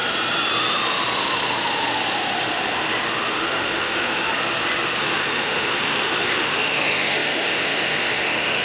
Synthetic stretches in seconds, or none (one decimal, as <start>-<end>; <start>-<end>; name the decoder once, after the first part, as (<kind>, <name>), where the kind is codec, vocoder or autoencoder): 3.3-4.3 (autoencoder, DAC-VAE); 5.0-8.6